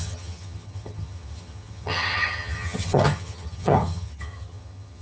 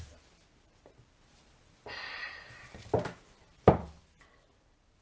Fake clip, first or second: first